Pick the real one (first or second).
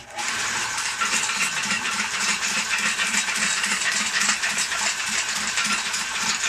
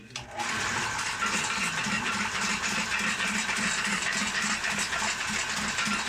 second